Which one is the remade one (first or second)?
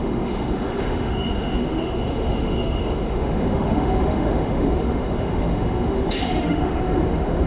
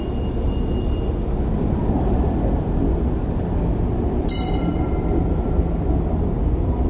first